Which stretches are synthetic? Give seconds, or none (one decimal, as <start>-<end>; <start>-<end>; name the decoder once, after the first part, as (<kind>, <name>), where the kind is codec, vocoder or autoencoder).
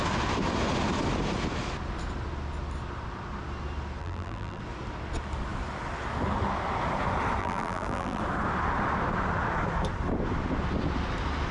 4.0-4.6 (vocoder, BigVGAN v2); 7.4-8.2